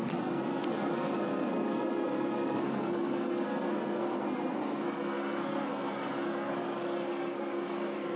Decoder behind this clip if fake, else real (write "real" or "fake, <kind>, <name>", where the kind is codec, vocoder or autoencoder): fake, codec, SNAC